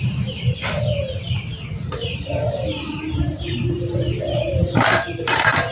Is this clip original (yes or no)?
no